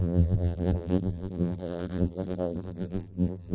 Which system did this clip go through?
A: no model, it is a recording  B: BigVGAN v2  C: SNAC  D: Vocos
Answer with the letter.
B